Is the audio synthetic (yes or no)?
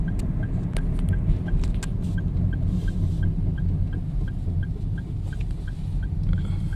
no